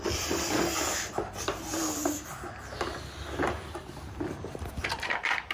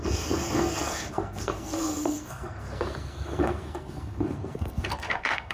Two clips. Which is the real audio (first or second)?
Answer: first